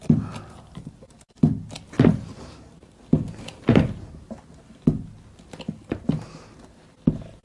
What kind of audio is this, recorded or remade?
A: recorded